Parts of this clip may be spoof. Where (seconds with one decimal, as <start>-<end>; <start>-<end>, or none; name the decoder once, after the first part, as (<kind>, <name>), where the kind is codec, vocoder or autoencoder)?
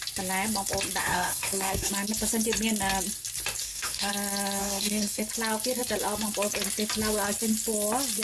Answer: 1.0-1.9 (codec, SNAC); 3.6-4.1; 4.6-5.2